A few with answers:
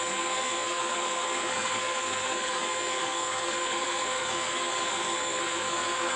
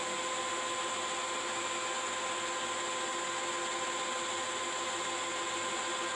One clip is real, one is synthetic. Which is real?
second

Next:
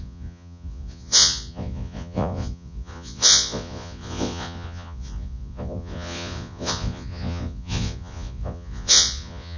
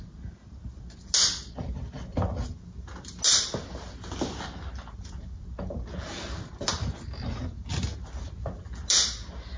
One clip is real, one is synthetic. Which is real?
second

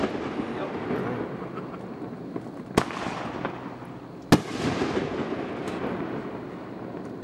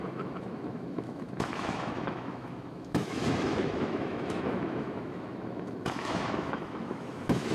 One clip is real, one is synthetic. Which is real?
first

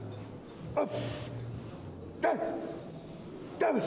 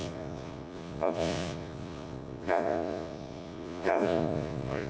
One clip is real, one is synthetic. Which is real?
first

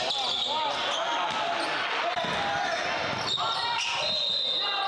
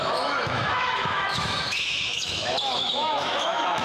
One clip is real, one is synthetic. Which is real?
first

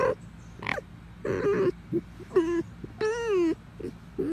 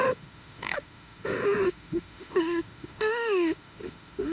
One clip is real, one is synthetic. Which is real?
first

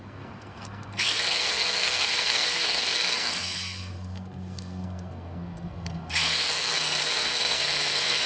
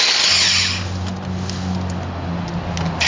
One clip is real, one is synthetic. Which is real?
second